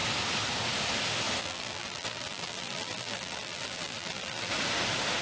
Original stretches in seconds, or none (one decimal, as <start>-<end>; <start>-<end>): 0.0-1.4; 4.5-5.2